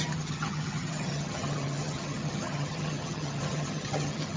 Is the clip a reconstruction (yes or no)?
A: yes